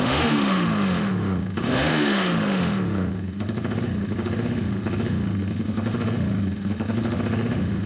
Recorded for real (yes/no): no